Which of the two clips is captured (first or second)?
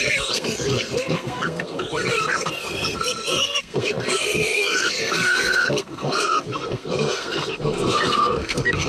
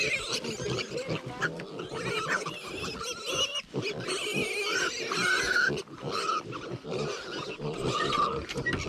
second